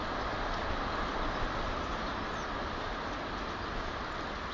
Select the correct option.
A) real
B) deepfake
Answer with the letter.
A